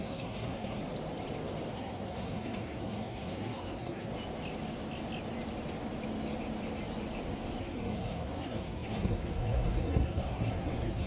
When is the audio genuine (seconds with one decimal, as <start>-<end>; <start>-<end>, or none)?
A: 0.8-1.7; 4.1-7.6